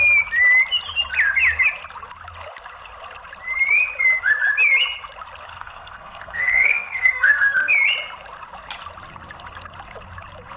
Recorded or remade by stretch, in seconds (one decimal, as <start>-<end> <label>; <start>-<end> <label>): 0.0-5.5 recorded; 5.5-7.7 remade; 7.7-10.6 recorded